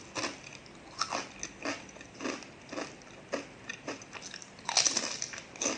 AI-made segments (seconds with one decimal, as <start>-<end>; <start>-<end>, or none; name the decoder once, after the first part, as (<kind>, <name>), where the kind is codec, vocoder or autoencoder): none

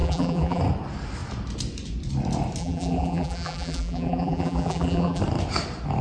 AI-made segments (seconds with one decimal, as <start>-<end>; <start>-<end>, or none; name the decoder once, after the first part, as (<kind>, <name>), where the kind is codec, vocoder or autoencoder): 0.0-0.6 (vocoder, BigVGAN v2); 2.6-5.2

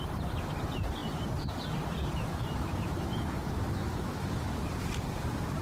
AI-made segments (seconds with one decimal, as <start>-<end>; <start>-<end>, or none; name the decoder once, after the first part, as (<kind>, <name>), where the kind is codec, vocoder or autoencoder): 2.2-4.7 (autoencoder, DAC-VAE)